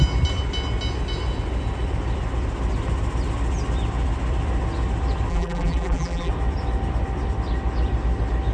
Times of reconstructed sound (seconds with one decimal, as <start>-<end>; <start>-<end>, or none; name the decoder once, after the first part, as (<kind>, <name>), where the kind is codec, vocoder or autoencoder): 5.3-6.3 (vocoder, BigVGAN v2)